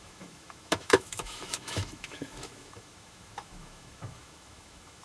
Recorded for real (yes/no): no